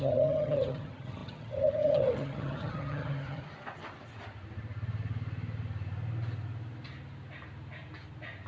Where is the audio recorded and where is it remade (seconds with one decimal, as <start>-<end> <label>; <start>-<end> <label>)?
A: 0.0-3.4 remade; 3.4-8.5 recorded